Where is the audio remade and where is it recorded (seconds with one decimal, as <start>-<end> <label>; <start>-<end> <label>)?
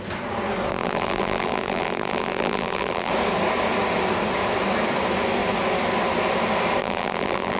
0.0-0.7 recorded; 0.7-3.1 remade; 3.1-6.8 recorded; 6.8-7.6 remade